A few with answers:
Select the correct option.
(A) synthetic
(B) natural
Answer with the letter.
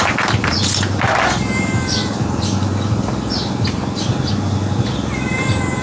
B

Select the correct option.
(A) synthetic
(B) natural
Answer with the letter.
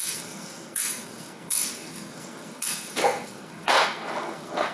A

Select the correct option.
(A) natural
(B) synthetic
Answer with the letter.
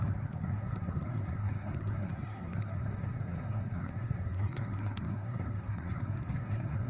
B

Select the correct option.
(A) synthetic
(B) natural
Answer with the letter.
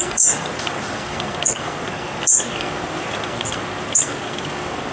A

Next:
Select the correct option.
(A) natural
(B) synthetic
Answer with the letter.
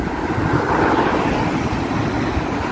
A